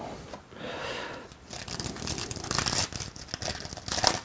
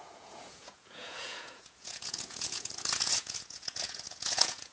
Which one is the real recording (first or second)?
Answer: first